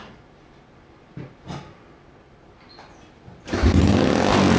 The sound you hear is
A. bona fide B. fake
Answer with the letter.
A